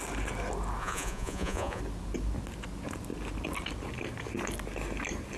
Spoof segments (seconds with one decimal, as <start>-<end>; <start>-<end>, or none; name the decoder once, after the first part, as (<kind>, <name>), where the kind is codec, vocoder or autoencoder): 0.8-1.8 (vocoder, Vocos)